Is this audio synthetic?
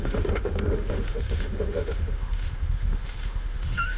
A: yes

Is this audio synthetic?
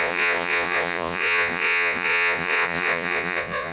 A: yes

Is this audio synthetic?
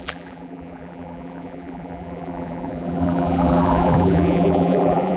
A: yes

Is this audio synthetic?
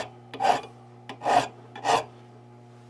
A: no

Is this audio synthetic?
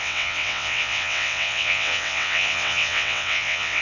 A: yes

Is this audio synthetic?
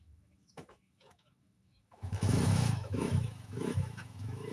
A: yes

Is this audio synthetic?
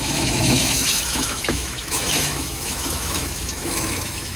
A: yes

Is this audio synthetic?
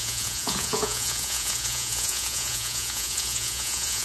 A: yes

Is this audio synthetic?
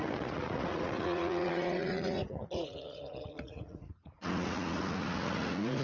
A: yes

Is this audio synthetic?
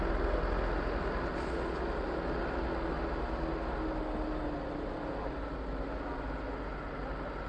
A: no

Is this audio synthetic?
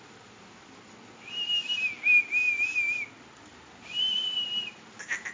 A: no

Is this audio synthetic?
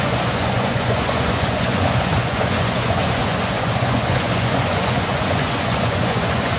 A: yes